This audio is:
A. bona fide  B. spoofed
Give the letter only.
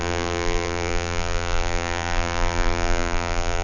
B